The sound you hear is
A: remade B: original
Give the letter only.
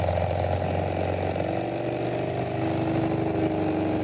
B